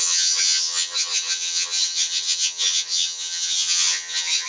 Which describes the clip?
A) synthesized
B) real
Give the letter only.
A